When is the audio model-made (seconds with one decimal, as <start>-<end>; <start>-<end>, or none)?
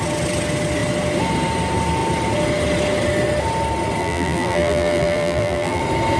4.0-5.8